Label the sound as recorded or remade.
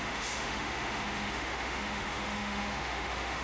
remade